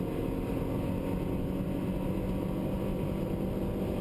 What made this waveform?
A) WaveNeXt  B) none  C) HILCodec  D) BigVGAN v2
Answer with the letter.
B